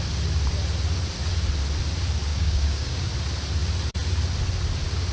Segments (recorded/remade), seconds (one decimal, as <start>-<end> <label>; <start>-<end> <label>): 0.0-2.3 recorded; 2.3-3.1 remade; 3.1-5.1 recorded